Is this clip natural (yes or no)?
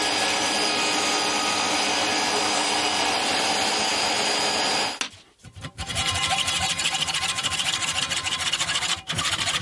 yes